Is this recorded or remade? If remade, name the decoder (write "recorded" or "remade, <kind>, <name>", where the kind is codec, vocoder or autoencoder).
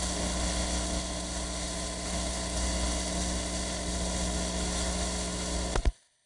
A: remade, codec, HILCodec